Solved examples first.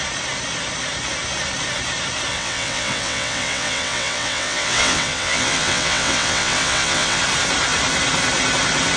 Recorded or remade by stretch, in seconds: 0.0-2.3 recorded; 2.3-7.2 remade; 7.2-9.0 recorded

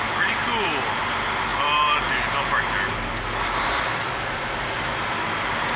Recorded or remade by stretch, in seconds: 0.0-5.8 recorded

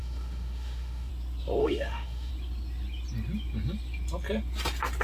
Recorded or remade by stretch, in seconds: 0.0-1.1 remade; 1.1-1.6 recorded; 1.6-2.3 remade; 2.3-5.0 recorded

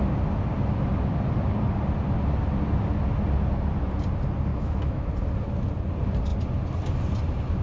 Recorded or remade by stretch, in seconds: 0.0-4.5 recorded; 4.5-5.1 remade; 5.1-7.6 recorded

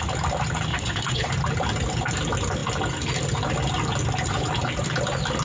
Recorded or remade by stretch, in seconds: 0.0-0.7 recorded; 0.7-1.3 remade; 1.3-5.4 recorded

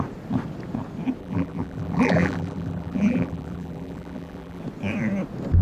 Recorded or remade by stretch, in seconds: 0.0-1.2 recorded; 1.2-4.6 remade; 4.6-5.6 recorded

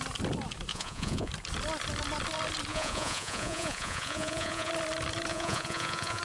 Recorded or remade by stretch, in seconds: 0.0-0.7 recorded; 0.7-1.3 remade; 1.3-2.7 recorded; 2.7-4.7 remade; 4.7-5.3 recorded; 5.3-6.2 remade

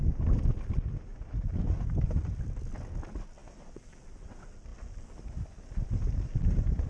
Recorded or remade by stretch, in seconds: 0.0-6.9 recorded